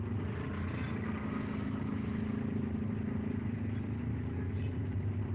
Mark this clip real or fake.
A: real